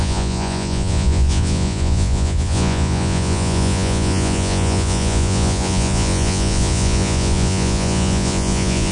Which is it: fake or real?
fake